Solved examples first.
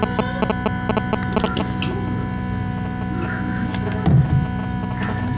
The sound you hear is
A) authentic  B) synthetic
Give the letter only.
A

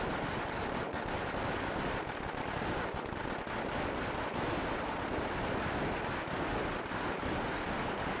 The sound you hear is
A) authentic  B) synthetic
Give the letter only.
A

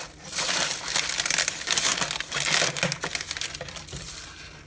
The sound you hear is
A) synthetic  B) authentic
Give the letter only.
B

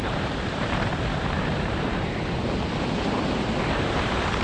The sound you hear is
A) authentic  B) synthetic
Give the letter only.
B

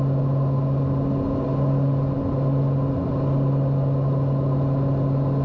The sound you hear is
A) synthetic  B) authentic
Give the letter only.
B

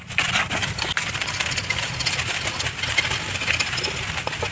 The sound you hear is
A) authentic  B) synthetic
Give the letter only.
A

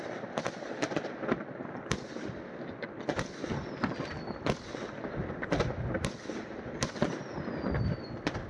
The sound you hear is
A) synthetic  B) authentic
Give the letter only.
B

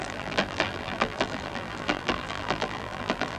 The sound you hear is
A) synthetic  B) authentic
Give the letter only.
A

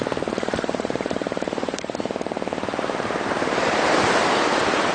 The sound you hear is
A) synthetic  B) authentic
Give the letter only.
A